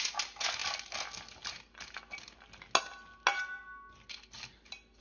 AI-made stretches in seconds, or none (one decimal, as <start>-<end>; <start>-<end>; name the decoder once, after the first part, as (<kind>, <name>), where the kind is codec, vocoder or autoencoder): none